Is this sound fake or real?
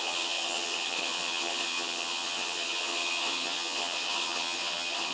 fake